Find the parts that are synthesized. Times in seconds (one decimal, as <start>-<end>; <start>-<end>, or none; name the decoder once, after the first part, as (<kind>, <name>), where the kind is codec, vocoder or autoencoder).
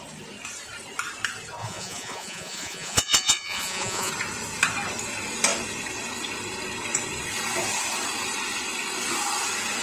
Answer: 1.6-4.1 (vocoder, Vocos)